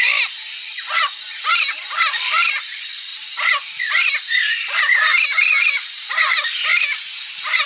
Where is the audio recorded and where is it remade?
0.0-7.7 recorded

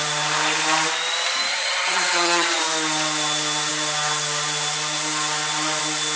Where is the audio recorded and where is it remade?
0.0-1.5 recorded; 1.5-2.6 remade; 2.6-6.2 recorded

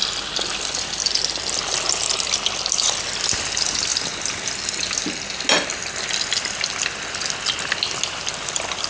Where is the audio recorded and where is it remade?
0.0-8.9 recorded

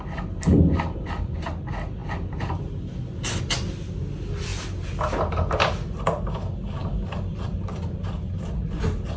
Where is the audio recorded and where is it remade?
0.0-9.2 recorded

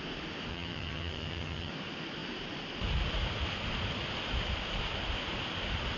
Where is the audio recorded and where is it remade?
0.0-0.5 recorded; 0.5-1.7 remade; 1.7-6.0 recorded

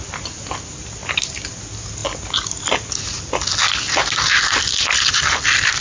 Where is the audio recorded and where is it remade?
0.0-5.8 recorded

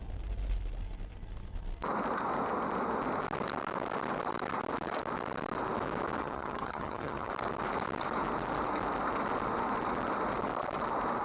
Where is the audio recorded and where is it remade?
0.0-6.2 recorded; 6.2-7.3 remade; 7.3-11.2 recorded